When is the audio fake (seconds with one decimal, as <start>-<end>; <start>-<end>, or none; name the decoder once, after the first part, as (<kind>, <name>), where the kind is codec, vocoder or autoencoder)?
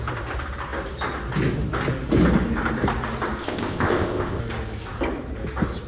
3.4-4.4 (codec, ZipCodec)